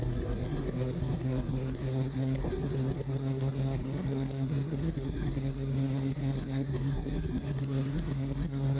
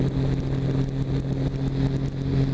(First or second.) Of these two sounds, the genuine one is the second